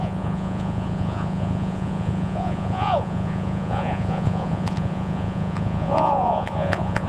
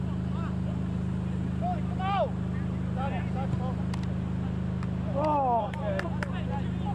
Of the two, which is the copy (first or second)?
first